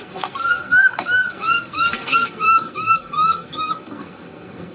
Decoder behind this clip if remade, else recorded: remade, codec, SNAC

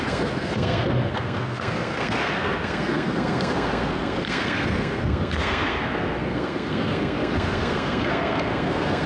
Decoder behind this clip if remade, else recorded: remade, codec, SNAC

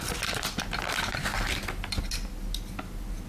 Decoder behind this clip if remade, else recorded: recorded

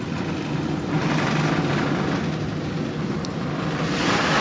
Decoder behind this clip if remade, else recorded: recorded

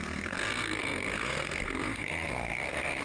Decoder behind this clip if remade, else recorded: remade, codec, SNAC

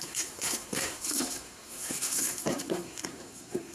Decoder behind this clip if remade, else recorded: remade, codec, SNAC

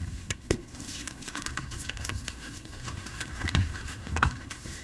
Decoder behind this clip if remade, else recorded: remade, codec, SNAC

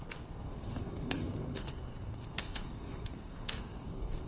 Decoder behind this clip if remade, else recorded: remade, codec, SNAC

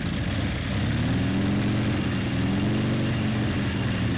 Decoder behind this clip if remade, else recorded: recorded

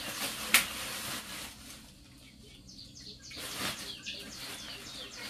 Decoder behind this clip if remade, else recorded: recorded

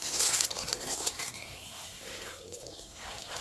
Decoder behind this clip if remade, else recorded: remade, codec, SNAC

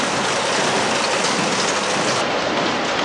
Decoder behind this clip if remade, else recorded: recorded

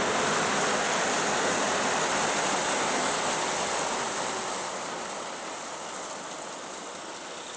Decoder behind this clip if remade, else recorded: recorded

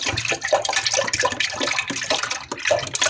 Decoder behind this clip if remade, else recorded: recorded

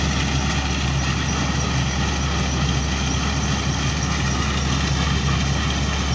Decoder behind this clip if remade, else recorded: recorded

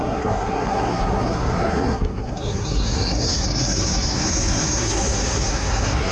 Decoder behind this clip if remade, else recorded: remade, codec, SNAC